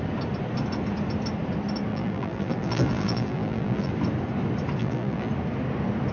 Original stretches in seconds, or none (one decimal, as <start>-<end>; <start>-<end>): 0.0-1.9; 3.9-4.8; 5.3-6.1